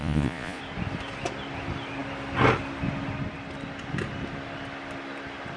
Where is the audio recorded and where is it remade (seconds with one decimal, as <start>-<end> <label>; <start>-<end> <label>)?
0.0-0.6 remade; 0.6-5.6 recorded